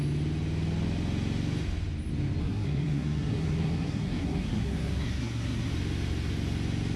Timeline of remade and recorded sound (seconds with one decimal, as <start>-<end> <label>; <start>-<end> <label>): 0.0-2.4 recorded; 2.4-5.7 remade; 5.7-7.0 recorded